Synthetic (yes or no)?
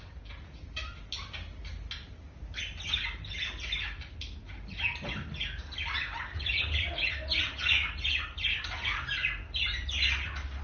no